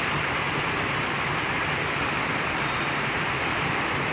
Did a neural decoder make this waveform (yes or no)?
yes